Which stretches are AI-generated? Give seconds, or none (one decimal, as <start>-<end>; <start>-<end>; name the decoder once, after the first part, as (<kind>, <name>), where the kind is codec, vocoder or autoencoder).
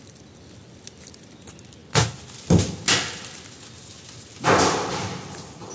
none